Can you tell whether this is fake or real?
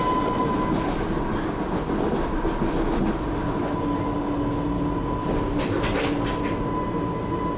real